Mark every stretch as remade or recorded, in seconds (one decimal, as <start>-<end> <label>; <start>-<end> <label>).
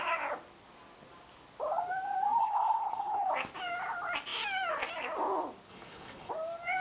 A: 0.0-2.4 recorded; 2.4-3.3 remade; 3.3-5.7 recorded; 5.7-6.3 remade; 6.3-6.8 recorded